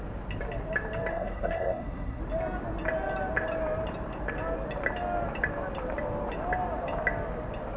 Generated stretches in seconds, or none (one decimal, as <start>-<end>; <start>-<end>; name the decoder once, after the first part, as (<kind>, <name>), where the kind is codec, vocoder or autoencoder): 1.1-2.2 (codec, SNAC)